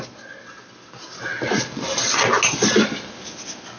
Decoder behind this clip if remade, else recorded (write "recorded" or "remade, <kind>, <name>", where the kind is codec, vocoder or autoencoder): recorded